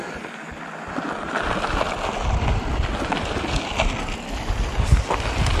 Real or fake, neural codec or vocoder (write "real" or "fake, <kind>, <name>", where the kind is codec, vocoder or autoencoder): real